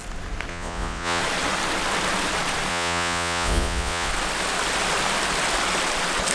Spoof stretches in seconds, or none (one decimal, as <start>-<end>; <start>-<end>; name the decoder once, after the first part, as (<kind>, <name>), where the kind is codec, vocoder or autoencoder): 0.5-1.2 (vocoder, Vocos); 2.7-4.1